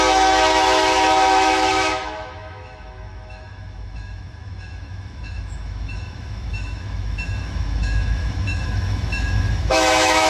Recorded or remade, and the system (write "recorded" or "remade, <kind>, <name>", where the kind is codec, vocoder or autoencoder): remade, autoencoder, DAC-VAE